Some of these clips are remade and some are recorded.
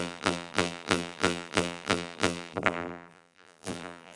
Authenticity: remade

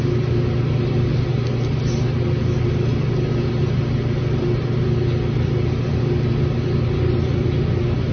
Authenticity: recorded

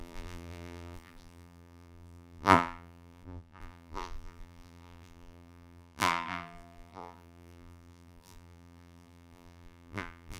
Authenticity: remade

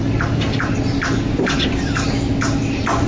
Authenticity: recorded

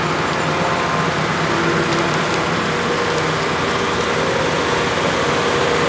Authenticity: recorded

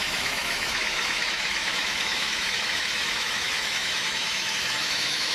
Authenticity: remade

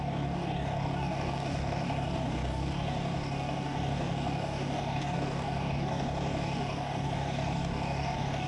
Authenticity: remade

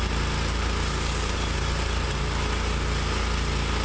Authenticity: recorded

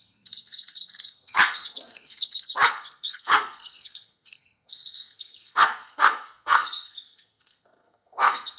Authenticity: remade